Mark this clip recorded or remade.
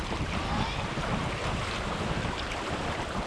recorded